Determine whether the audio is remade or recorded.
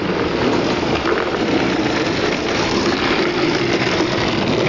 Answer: remade